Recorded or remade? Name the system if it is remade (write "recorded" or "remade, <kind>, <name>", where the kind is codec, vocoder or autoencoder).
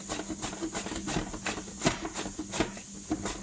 recorded